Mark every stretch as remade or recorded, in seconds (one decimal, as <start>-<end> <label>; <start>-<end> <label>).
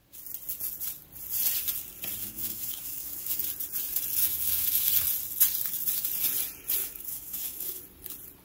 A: 0.0-2.2 recorded; 2.2-3.4 remade; 3.4-4.2 recorded; 4.2-4.9 remade; 4.9-6.8 recorded; 6.8-7.8 remade; 7.8-8.4 recorded